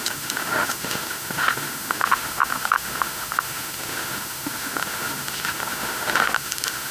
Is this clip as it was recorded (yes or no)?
no